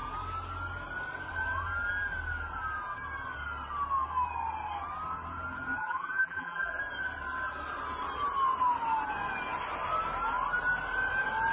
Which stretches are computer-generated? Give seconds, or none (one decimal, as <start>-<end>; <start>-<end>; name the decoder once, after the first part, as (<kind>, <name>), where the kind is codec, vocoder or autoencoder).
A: 5.8-6.8 (vocoder, BigVGAN v2)